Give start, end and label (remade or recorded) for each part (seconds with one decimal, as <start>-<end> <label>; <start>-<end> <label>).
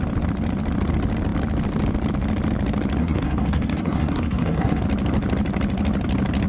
0.0-3.0 recorded; 3.0-4.8 remade; 4.8-6.5 recorded